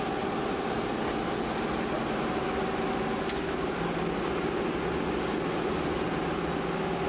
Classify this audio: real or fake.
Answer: real